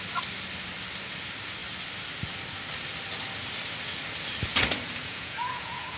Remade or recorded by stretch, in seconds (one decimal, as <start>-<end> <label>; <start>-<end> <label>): 0.0-5.0 recorded; 5.0-6.0 remade